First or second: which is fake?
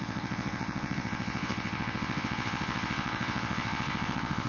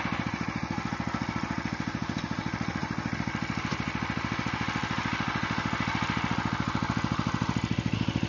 first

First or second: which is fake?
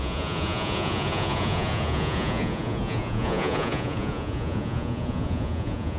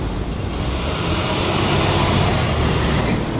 first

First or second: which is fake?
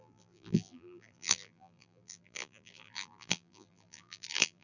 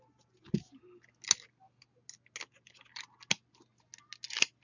first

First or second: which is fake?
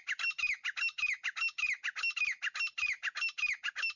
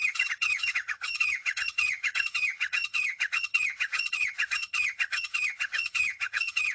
second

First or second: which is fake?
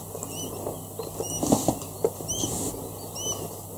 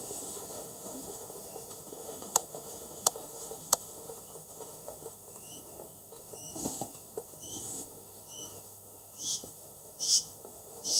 second